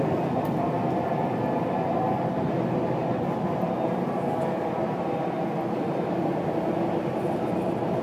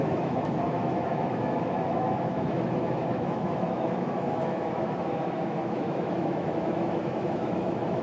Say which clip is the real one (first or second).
first